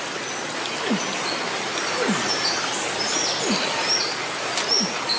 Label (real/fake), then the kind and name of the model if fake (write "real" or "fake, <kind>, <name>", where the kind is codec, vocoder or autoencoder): real